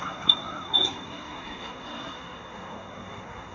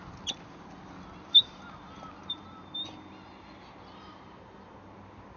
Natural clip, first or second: second